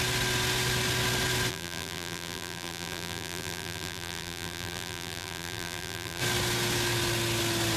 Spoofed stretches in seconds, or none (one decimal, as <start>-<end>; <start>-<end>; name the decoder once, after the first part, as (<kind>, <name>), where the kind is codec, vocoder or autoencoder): 1.5-6.2 (vocoder, BigVGAN v2)